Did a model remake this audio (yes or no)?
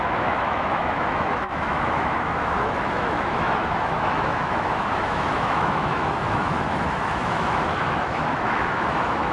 yes